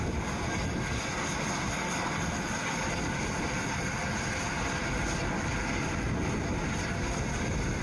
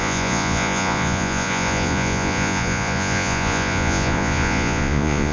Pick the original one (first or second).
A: first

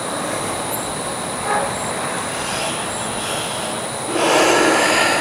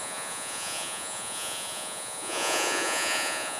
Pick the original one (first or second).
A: first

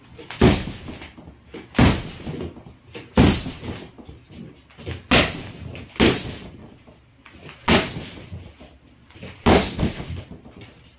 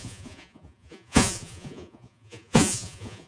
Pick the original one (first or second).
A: first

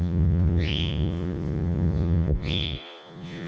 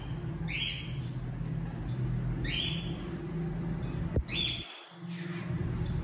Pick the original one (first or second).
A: second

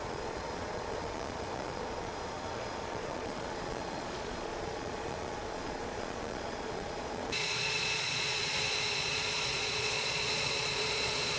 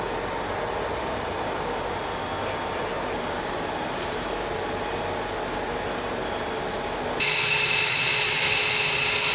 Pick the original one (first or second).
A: second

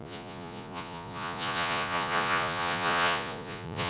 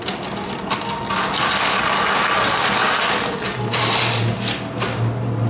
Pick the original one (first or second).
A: second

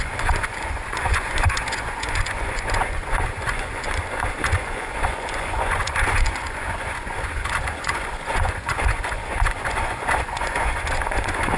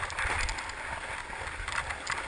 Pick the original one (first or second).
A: second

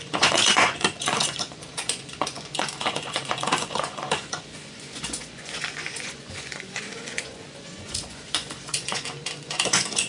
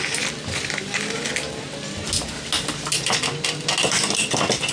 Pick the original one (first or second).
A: second